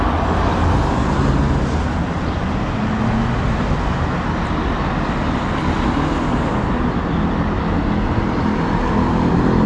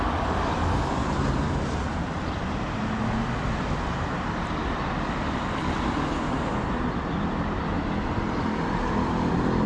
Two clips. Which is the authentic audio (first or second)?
first